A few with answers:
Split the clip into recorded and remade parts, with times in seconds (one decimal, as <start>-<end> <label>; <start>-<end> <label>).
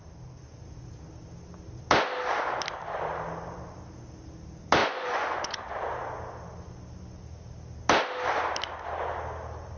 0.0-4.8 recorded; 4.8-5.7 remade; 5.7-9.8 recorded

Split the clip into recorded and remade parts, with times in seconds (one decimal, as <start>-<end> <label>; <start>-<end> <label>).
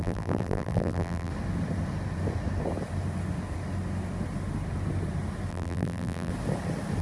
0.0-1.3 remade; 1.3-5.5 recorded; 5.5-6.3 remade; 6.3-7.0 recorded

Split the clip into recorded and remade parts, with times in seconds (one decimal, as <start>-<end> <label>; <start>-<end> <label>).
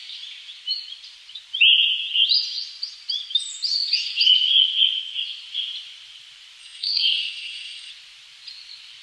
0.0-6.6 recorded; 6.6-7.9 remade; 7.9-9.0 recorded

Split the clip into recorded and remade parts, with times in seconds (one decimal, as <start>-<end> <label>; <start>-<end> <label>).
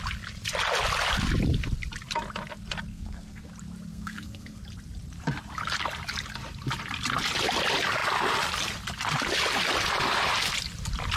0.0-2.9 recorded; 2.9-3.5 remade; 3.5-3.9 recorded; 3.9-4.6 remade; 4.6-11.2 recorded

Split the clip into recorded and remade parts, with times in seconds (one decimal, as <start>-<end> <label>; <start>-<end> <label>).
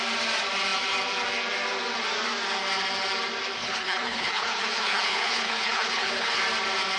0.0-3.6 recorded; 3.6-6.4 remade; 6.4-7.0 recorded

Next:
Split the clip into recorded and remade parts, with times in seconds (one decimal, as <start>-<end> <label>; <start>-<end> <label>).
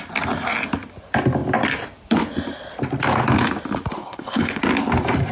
0.0-4.0 recorded; 4.0-4.6 remade; 4.6-5.3 recorded